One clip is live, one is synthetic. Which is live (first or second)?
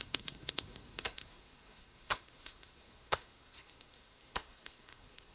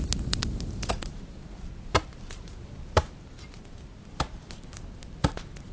second